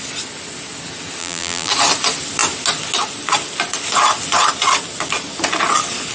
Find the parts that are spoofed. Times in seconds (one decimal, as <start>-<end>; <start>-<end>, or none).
1.2-1.7

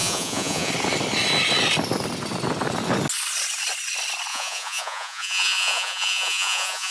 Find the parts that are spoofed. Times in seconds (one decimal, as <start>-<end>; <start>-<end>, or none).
0.0-0.7; 4.3-6.9

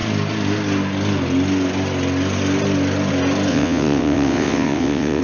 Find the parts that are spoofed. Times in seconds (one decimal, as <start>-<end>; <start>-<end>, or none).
3.5-5.2